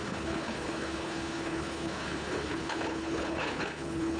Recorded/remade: remade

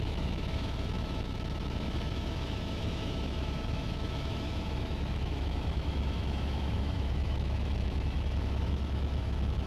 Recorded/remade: remade